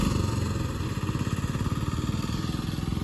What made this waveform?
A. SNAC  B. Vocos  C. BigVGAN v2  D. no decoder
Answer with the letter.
D